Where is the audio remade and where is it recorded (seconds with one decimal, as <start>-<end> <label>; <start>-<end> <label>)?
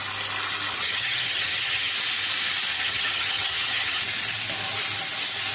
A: 0.0-0.7 recorded; 0.7-1.9 remade; 1.9-2.7 recorded; 2.7-4.0 remade; 4.0-5.5 recorded